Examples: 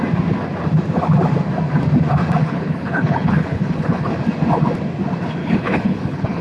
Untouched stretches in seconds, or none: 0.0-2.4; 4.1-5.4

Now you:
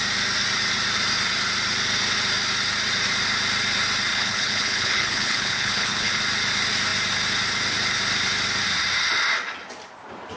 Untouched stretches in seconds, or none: 0.0-4.1; 6.2-10.4

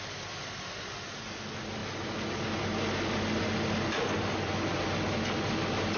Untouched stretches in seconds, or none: 0.0-6.0

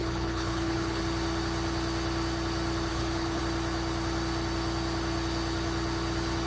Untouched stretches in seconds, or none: 1.0-2.9; 3.4-6.5

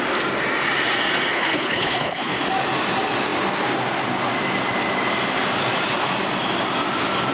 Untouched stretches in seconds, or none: 0.0-1.3; 2.4-7.3

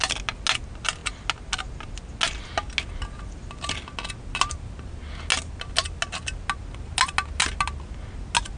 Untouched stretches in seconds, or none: 0.0-8.6